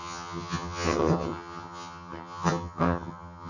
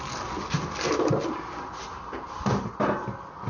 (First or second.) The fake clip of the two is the first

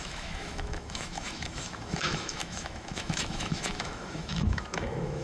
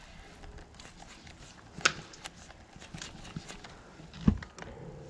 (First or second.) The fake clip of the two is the first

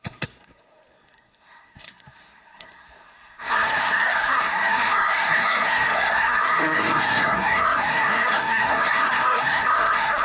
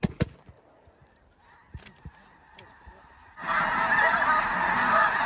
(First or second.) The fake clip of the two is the first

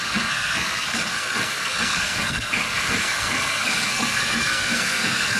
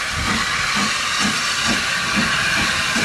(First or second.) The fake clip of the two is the first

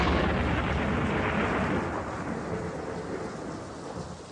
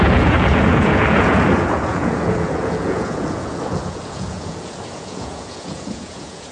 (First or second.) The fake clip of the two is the second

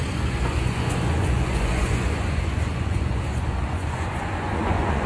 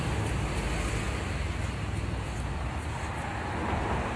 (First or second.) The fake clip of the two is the first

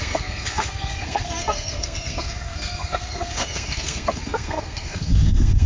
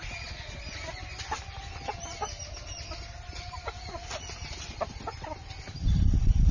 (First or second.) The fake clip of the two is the first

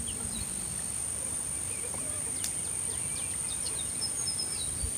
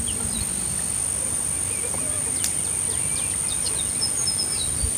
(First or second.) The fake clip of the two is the first